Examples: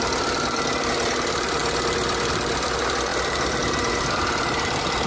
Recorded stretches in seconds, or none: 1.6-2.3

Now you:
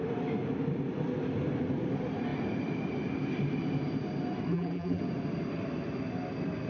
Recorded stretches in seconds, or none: 0.0-4.5; 5.0-6.7

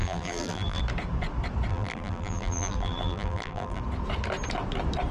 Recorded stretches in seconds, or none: 0.8-1.7; 3.8-5.1

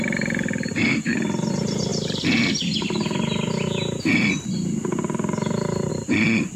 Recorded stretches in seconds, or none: 1.9-5.9

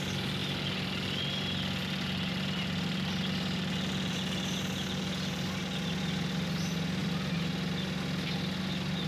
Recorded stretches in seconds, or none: 0.0-9.1

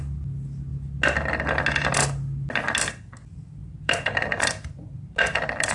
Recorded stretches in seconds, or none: 0.0-3.2

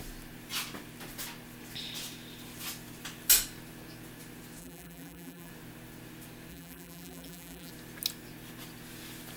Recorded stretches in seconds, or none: 0.0-4.6; 5.5-6.5; 7.7-9.4

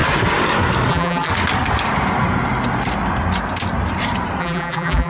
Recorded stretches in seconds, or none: 0.0-0.9; 1.3-4.4